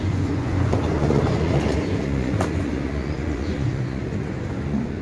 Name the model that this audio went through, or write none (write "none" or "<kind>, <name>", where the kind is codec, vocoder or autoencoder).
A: vocoder, Vocos